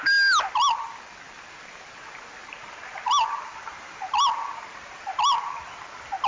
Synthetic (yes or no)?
no